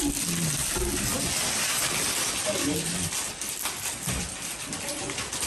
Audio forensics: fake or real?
real